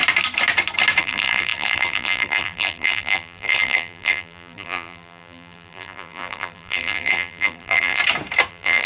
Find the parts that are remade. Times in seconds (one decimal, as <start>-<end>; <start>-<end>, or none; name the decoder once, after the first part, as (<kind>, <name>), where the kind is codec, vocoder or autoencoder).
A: 1.0-8.0 (vocoder, BigVGAN v2); 8.5-8.9

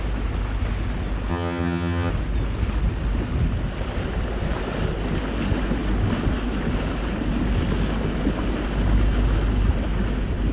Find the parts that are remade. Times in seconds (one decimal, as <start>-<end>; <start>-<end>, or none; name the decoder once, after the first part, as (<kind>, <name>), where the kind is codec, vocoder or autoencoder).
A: 1.3-2.1 (vocoder, HiFi-GAN)